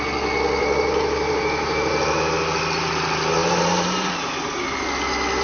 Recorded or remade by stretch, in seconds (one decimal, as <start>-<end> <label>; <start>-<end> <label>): 0.0-0.6 recorded; 0.6-2.0 remade; 2.0-3.4 recorded; 3.4-4.1 remade; 4.1-5.4 recorded